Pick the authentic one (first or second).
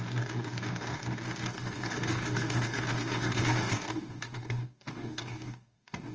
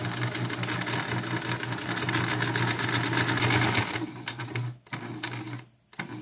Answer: second